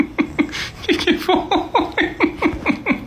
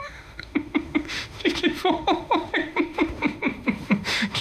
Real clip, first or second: first